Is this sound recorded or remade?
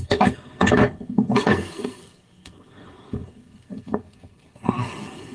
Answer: remade